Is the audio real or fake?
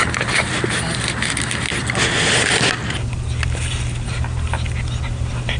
real